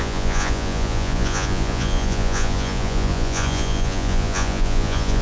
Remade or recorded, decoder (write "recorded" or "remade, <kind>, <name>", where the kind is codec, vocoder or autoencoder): remade, vocoder, Vocos